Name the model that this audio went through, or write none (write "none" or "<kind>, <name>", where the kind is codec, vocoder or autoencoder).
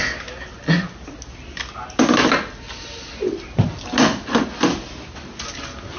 none